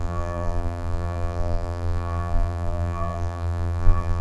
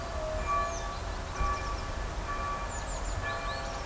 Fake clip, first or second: first